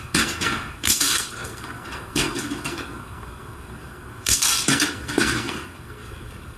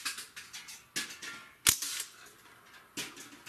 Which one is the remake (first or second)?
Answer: first